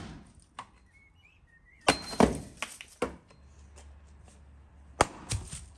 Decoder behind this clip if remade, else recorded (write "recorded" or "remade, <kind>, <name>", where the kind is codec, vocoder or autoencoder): recorded